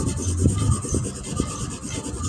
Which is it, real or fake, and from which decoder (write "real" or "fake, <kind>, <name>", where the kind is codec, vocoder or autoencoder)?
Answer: real